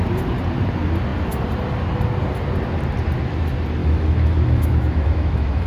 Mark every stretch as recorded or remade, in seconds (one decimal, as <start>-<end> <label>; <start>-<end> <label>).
0.0-3.8 recorded; 3.8-5.7 remade